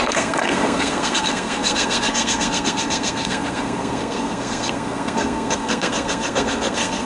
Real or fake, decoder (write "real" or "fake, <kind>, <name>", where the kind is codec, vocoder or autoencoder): fake, codec, SNAC